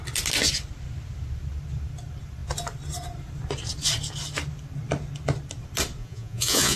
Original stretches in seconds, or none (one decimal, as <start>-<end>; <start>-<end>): 0.0-6.0